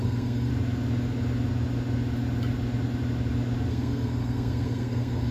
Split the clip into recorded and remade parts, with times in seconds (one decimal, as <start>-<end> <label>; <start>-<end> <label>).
0.0-0.5 remade; 0.5-3.7 recorded; 3.7-5.3 remade